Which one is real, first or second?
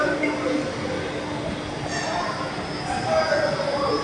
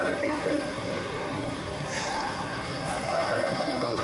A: first